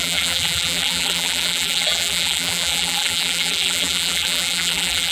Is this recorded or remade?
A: remade